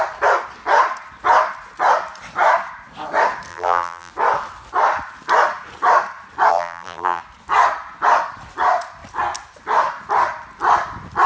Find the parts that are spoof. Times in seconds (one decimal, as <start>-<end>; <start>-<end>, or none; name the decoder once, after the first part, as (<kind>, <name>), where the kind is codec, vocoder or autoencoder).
3.5-4.1 (vocoder, BigVGAN v2); 6.5-7.2